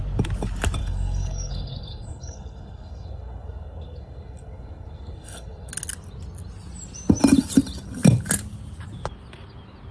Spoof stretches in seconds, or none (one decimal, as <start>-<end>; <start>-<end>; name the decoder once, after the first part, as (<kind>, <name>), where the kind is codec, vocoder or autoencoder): 0.8-5.7 (codec, SNAC)